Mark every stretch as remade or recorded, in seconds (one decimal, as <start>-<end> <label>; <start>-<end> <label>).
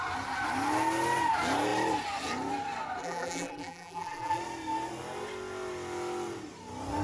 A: 0.0-3.0 recorded; 3.0-4.4 remade; 4.4-7.0 recorded